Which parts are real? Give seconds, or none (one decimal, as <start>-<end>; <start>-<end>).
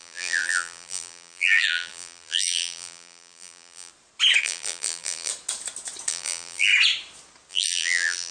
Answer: 3.9-4.4; 5.3-6.1; 6.7-7.5